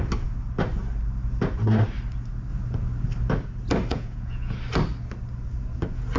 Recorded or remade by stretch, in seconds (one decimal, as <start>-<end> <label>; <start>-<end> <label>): 0.0-3.9 recorded; 3.9-4.6 remade; 4.6-6.2 recorded